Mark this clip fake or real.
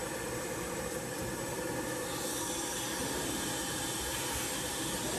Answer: fake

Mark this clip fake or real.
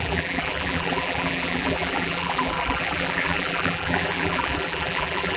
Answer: fake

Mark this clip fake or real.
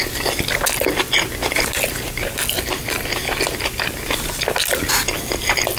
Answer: real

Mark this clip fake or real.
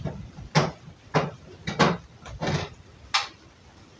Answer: real